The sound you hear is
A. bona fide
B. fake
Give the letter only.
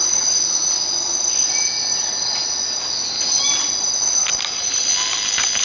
A